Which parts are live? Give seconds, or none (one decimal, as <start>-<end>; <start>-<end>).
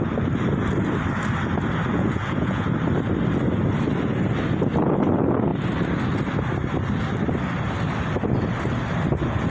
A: 0.0-1.9; 2.7-9.5